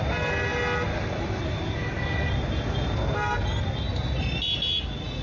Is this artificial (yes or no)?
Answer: no